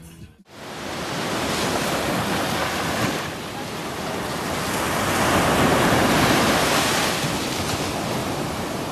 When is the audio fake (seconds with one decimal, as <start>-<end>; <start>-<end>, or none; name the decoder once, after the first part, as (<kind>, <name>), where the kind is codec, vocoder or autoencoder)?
5.7-7.1 (vocoder, BigVGAN v2); 8.2-8.9